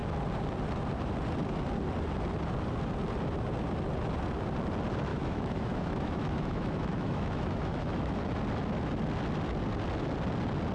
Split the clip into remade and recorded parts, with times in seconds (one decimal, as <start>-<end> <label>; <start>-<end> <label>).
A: 0.0-5.1 recorded; 5.1-8.2 remade; 8.2-10.7 recorded